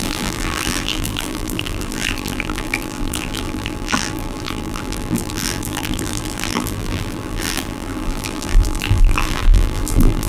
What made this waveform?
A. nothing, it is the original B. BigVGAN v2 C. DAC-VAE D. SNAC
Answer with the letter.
B